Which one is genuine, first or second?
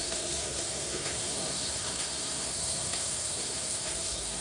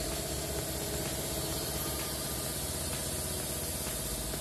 second